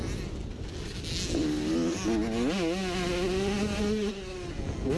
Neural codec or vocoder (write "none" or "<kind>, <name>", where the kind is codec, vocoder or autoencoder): none